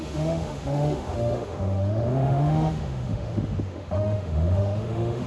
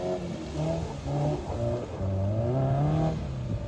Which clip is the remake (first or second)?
first